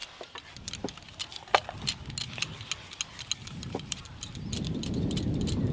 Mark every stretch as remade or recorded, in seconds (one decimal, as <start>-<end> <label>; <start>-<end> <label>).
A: 0.0-3.4 recorded; 3.4-5.7 remade